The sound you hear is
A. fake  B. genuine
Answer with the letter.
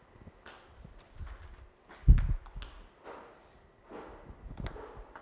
B